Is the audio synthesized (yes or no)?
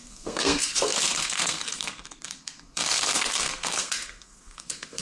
yes